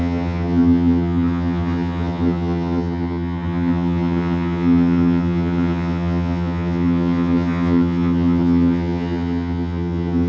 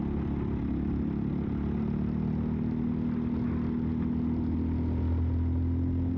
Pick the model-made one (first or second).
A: first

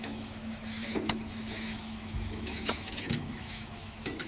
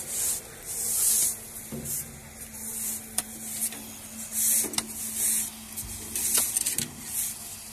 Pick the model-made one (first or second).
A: first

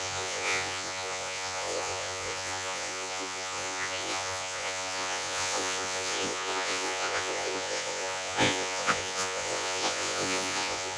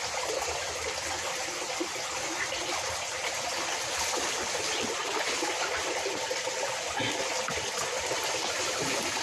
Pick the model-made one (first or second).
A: first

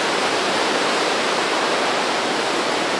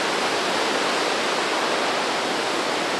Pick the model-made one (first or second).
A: first